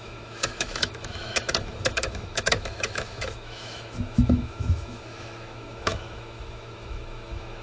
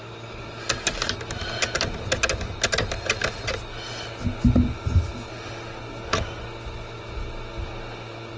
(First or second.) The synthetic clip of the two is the first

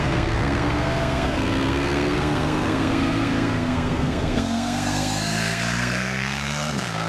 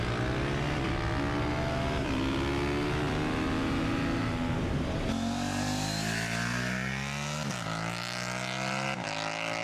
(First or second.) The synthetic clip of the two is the first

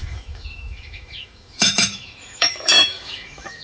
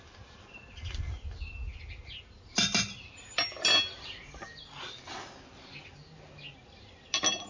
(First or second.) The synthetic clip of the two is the first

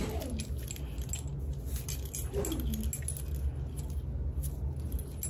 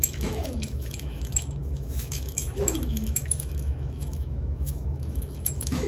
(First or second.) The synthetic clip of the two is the second